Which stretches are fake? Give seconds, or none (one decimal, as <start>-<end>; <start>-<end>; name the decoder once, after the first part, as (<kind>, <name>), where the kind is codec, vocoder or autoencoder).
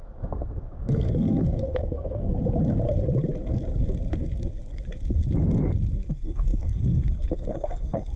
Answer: 0.0-2.3 (codec, SNAC); 6.1-8.2